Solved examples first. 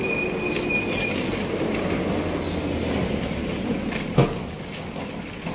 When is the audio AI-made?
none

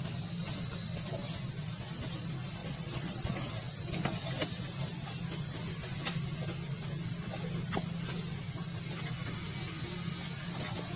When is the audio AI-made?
2.6-3.5 (vocoder, Vocos)

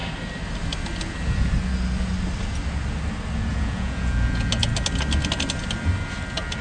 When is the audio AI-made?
3.5-4.5 (vocoder, Vocos)

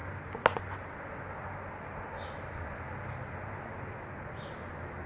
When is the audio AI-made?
none

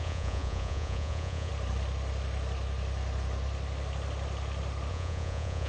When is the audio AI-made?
0.0-1.5 (vocoder, Vocos); 4.9-5.7

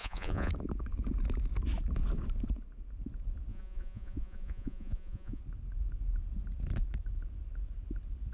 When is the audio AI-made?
0.0-0.5 (vocoder, Vocos); 3.5-5.4